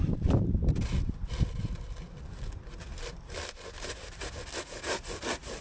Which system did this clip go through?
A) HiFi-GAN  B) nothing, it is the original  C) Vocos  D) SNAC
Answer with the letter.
B